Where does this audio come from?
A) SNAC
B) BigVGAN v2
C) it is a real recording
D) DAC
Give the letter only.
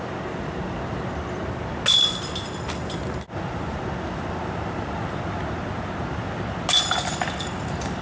C